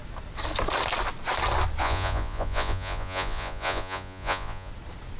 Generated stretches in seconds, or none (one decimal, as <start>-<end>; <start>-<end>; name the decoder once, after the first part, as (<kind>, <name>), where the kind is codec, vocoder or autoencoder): 1.8-4.7 (vocoder, Vocos)